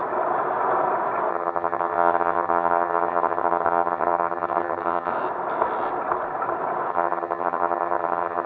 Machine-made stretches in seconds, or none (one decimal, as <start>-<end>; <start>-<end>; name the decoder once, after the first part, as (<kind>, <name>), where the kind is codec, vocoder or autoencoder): 1.3-5.1 (vocoder, HiFi-GAN); 6.9-8.5

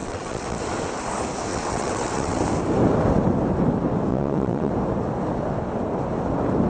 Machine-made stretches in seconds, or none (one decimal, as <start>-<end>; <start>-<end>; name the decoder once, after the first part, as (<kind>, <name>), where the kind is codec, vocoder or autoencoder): 0.0-0.6 (vocoder, WaveNeXt); 1.5-2.4; 4.1-4.7

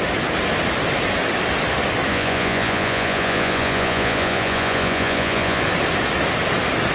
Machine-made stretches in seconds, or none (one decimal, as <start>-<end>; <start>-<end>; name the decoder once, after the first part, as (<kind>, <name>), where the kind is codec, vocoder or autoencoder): 2.1-5.6 (vocoder, Vocos)

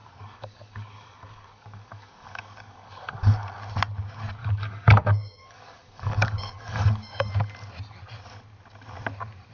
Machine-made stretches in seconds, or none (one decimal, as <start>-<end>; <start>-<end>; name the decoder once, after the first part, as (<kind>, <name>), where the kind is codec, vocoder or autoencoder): 0.0-3.6 (codec, DAC); 4.4-7.3

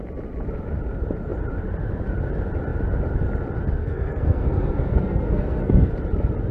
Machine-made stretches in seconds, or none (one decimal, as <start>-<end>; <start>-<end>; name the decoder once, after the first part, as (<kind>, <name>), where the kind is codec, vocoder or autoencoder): 3.8-5.9 (codec, SNAC)